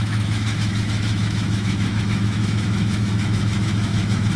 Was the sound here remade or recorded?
remade